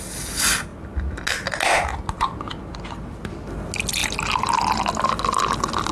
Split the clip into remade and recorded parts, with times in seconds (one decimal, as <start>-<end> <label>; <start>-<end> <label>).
0.0-5.9 recorded